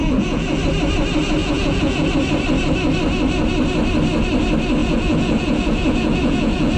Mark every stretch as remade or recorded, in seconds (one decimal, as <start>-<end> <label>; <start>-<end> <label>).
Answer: 0.0-0.6 remade; 0.6-1.4 recorded; 1.4-2.1 remade; 2.1-4.8 recorded; 4.8-6.8 remade